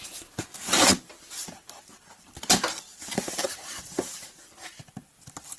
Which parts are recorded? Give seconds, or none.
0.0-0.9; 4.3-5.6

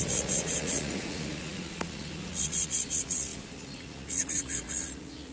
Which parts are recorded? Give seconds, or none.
none

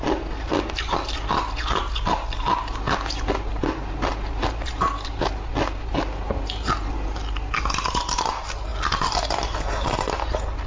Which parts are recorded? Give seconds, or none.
0.0-10.7

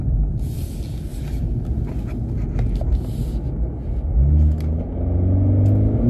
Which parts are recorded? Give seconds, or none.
0.0-6.1

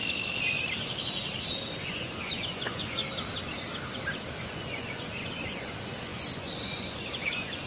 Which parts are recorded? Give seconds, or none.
0.0-1.8; 3.0-4.4

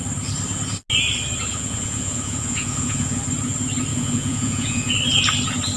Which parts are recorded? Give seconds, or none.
0.0-1.5; 3.2-3.9; 4.9-5.8

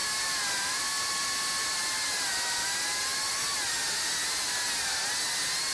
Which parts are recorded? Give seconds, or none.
0.0-5.7

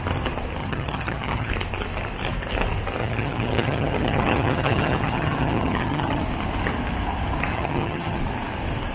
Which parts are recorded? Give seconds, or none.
0.0-0.6; 1.5-3.0; 6.2-7.5; 8.2-8.9